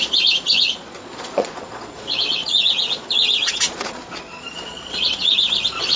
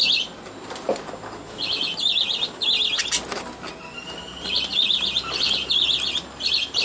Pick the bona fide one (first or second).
second